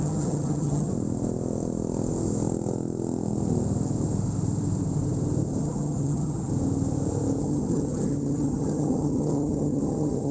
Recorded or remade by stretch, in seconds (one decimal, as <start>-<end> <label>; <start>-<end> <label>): 0.0-0.9 remade; 0.9-5.6 recorded; 5.6-6.5 remade; 6.5-7.4 recorded; 7.4-10.3 remade